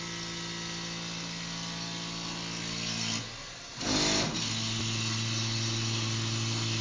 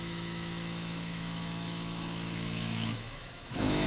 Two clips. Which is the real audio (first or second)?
first